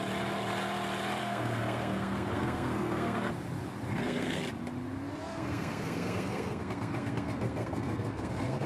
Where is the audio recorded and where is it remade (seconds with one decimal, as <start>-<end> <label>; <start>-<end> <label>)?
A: 0.0-1.2 recorded; 1.2-3.3 remade; 3.3-3.9 recorded; 3.9-4.4 remade; 4.4-5.3 recorded; 5.3-8.7 remade